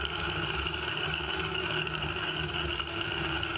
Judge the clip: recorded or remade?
remade